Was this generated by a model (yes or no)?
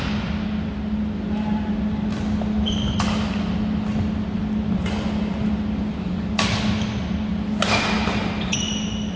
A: no